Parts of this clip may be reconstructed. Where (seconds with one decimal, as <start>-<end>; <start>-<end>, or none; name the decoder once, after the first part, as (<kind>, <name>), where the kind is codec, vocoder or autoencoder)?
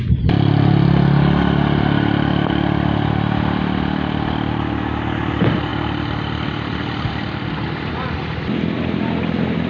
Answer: none